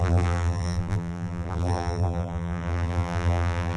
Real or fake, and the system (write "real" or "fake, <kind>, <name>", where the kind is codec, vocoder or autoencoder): fake, vocoder, BigVGAN v2